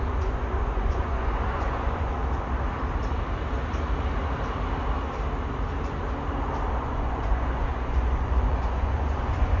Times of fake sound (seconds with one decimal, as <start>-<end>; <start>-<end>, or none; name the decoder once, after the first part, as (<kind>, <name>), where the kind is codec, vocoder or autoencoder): 0.0-2.2 (vocoder, Vocos); 6.7-9.6